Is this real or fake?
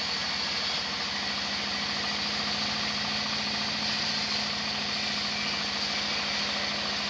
real